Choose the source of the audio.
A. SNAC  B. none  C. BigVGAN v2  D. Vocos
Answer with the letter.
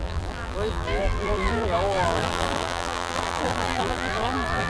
C